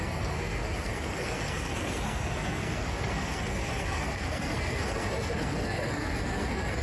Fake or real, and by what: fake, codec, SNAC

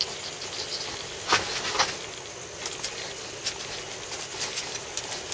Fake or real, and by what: real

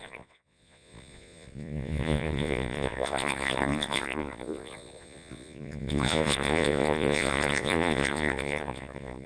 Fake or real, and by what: fake, vocoder, Vocos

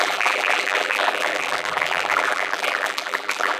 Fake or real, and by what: fake, vocoder, BigVGAN v2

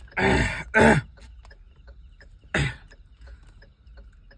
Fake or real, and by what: real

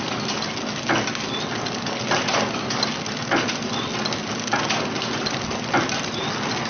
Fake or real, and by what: real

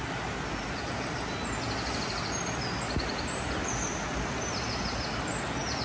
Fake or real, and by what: real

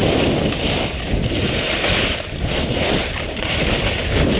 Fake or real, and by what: real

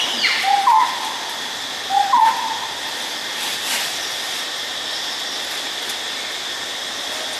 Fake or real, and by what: real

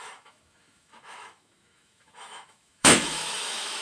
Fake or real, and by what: fake, autoencoder, DAC-VAE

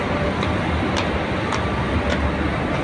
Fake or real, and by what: real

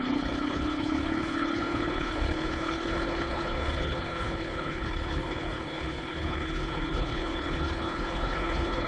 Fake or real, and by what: fake, codec, HILCodec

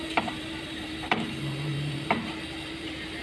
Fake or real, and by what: fake, vocoder, BigVGAN v2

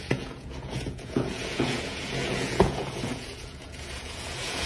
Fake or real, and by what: fake, vocoder, Vocos